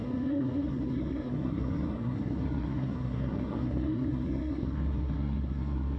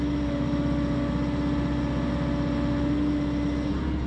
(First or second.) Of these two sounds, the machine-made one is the first